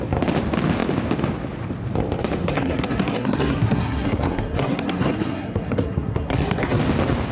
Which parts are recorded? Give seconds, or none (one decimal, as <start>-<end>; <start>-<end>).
0.0-2.4; 6.8-7.3